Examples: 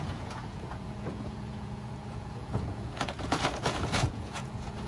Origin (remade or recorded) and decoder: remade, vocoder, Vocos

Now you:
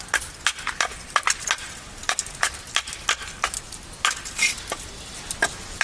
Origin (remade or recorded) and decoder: recorded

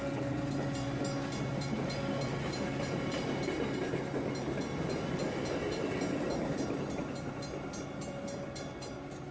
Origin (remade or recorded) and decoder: recorded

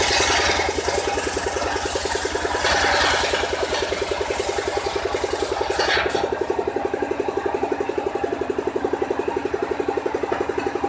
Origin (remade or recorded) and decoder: recorded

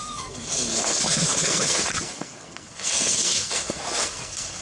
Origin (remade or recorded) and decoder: remade, codec, SNAC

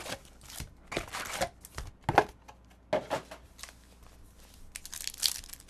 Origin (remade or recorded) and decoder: recorded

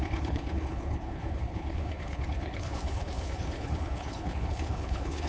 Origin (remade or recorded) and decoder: remade, codec, HILCodec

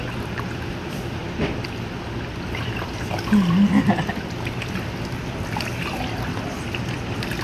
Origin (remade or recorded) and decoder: recorded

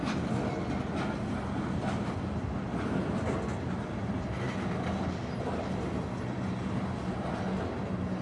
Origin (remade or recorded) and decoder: recorded